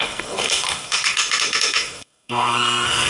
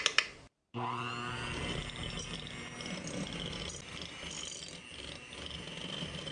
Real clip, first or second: second